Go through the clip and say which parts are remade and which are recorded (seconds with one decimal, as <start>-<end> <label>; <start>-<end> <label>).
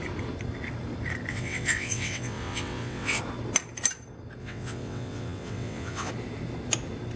0.0-1.3 recorded; 1.3-3.2 remade; 3.2-4.4 recorded; 4.4-6.1 remade; 6.1-7.2 recorded